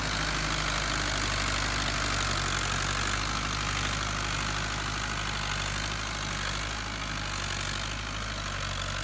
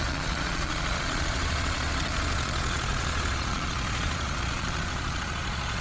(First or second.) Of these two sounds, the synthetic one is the second